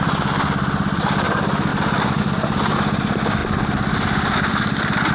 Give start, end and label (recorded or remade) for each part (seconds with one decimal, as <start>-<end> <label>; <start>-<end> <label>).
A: 0.0-5.1 recorded

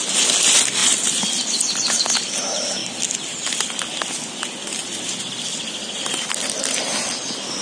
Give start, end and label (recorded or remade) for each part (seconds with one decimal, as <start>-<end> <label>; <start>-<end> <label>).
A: 0.0-7.6 recorded

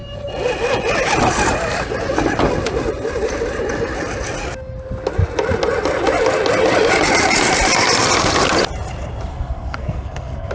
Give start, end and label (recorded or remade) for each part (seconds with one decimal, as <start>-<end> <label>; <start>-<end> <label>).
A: 0.0-9.3 recorded; 9.3-10.5 remade

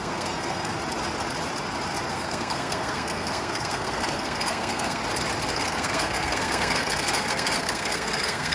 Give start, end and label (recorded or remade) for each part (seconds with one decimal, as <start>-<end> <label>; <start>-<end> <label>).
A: 0.0-0.7 remade; 0.7-2.1 recorded; 2.1-5.0 remade; 5.0-5.5 recorded; 5.5-8.5 remade